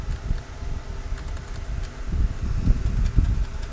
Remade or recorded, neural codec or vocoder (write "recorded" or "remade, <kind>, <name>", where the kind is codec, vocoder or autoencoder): recorded